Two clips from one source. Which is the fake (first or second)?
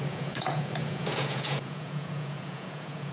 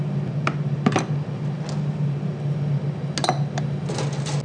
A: first